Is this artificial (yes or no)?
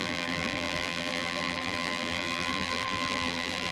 yes